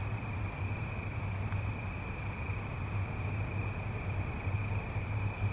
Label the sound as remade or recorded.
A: recorded